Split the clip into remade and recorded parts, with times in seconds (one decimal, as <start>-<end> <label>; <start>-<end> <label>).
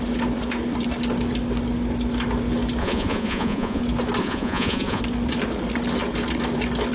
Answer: 0.0-2.8 recorded; 2.8-3.8 remade; 3.8-4.2 recorded; 4.2-5.0 remade; 5.0-6.9 recorded